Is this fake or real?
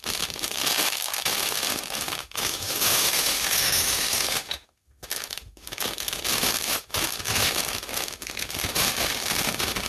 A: fake